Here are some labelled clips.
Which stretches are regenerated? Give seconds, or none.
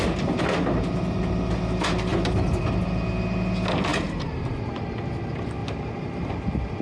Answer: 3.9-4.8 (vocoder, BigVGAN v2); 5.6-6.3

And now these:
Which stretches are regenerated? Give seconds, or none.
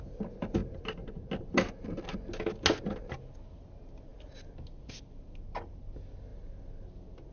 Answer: none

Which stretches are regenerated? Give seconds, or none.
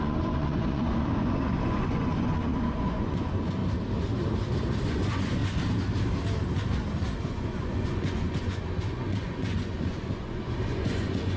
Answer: 0.0-3.6 (vocoder, Vocos); 4.8-5.4; 7.2-11.4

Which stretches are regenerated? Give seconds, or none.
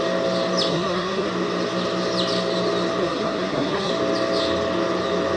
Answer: 0.7-1.3 (codec, SNAC); 3.0-3.9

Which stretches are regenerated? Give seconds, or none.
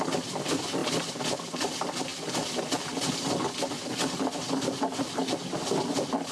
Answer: none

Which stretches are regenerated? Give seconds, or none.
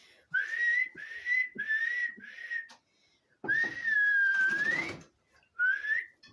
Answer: none